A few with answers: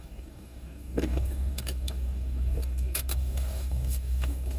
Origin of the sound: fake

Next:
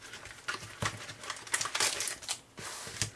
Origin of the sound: real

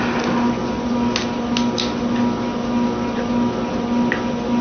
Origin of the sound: real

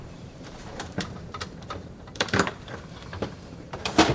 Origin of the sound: fake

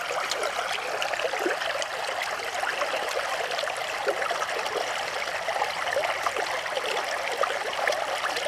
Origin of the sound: real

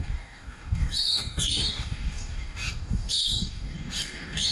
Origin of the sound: fake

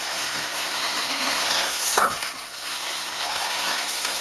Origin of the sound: fake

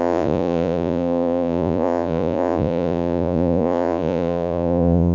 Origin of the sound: fake